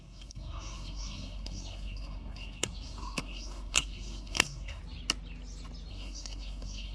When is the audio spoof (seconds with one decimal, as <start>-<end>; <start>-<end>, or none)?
0.0-4.8; 5.9-6.9